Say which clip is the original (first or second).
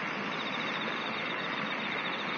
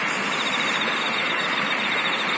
first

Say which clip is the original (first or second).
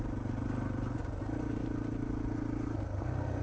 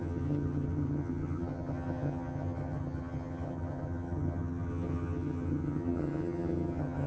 first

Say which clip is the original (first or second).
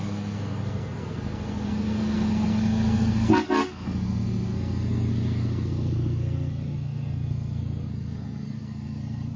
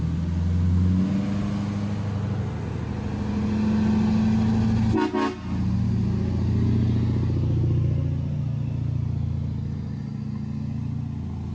second